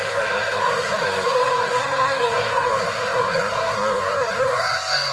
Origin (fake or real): fake